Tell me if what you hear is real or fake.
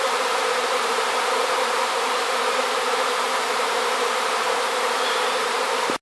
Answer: fake